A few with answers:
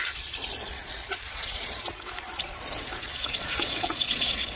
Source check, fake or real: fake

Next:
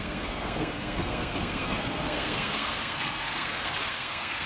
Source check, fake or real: fake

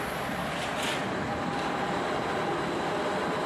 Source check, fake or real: real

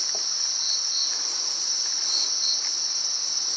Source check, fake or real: real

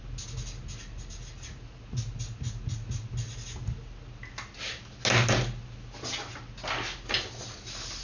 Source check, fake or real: real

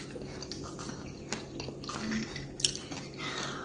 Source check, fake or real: real